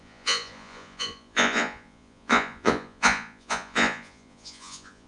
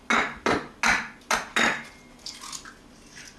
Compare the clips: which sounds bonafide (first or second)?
second